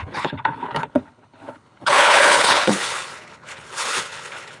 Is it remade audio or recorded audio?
remade